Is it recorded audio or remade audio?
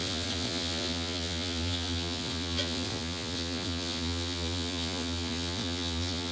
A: remade